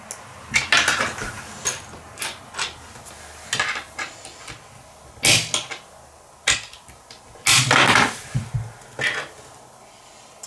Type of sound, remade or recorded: recorded